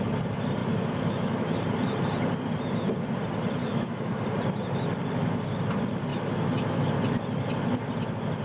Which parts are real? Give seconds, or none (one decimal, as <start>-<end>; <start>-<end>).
0.0-0.6; 1.6-3.6; 4.1-6.1; 6.9-8.4